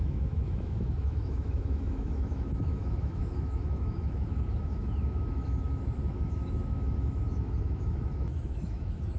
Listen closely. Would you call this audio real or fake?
fake